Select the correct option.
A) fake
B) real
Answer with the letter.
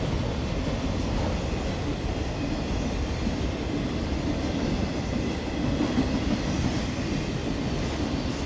B